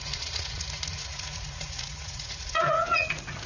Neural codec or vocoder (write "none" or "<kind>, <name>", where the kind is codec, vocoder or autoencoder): vocoder, Vocos